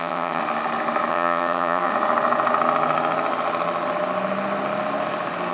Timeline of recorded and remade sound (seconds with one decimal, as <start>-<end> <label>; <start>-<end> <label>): 0.0-0.4 remade; 0.4-1.1 recorded; 1.1-1.9 remade; 1.9-5.5 recorded